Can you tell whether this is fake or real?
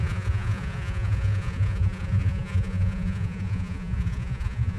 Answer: fake